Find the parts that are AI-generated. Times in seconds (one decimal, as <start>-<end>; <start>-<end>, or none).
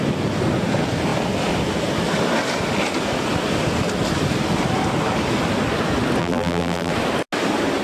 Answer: 6.2-6.9